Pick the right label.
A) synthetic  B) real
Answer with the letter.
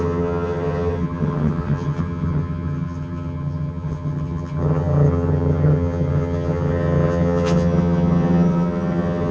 A